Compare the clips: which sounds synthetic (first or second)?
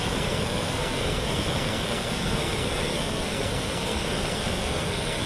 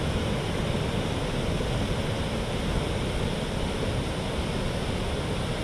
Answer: first